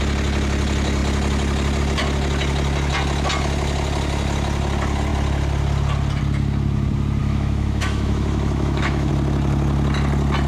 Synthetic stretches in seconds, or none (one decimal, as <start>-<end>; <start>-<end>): 7.2-9.1